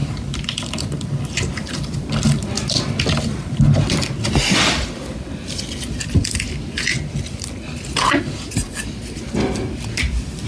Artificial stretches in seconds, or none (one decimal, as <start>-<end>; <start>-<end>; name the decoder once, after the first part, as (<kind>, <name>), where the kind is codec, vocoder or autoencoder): none